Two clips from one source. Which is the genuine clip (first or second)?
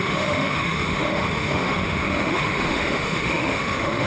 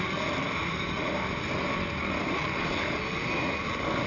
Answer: second